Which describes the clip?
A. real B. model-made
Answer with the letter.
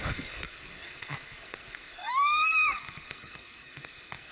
B